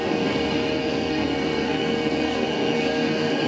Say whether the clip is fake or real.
fake